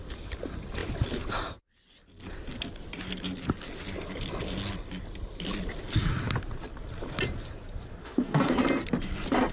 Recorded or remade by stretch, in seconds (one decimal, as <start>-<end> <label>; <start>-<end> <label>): 0.0-8.0 recorded; 8.0-8.6 remade; 8.6-9.5 recorded